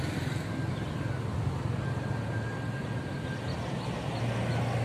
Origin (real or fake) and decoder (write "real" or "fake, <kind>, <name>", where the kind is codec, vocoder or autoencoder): real